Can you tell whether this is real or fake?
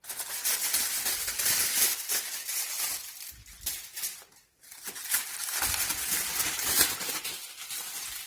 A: real